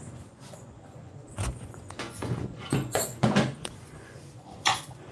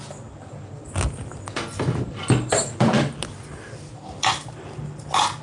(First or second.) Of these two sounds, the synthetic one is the first